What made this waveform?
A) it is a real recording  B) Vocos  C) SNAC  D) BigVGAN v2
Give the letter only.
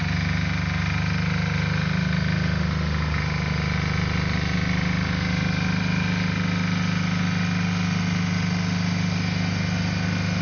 A